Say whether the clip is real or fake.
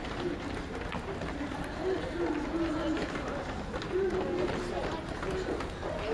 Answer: real